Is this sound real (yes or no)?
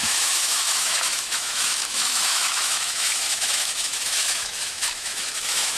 no